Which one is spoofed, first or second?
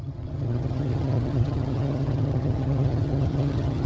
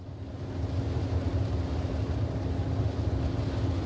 first